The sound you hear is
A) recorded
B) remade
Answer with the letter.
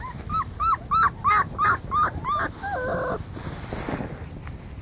A